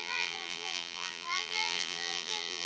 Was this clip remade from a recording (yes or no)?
yes